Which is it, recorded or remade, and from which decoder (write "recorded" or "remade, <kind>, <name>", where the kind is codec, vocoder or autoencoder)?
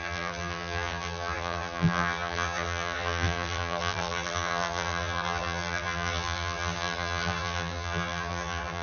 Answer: remade, vocoder, BigVGAN v2